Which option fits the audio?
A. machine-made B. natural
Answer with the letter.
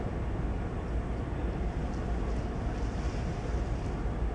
B